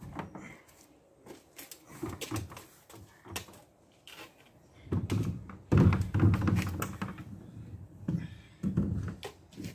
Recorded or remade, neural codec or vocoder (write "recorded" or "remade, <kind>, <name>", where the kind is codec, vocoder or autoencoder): recorded